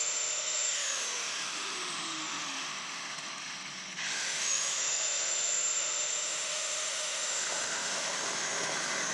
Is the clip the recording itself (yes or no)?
no